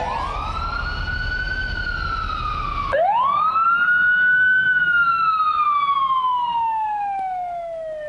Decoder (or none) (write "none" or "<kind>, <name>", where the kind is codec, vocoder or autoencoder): none